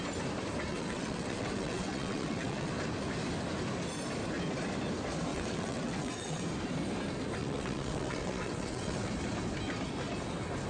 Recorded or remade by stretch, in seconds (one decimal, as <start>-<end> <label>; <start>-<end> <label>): 0.0-0.7 recorded; 0.7-2.7 remade; 2.7-5.3 recorded; 5.3-6.4 remade; 6.4-7.4 recorded; 7.4-9.1 remade; 9.1-10.7 recorded